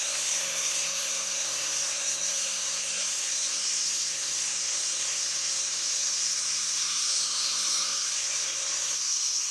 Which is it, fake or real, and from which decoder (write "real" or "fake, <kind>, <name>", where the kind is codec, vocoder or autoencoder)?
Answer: fake, codec, SNAC